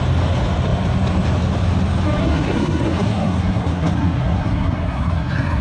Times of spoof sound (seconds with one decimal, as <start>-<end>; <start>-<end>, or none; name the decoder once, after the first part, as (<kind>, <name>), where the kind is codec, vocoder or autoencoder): 2.2-5.6 (codec, SNAC)